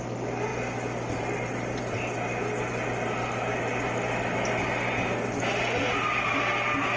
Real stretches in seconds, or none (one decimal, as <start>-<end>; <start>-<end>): 0.0-7.0